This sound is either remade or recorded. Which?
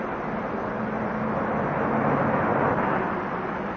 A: recorded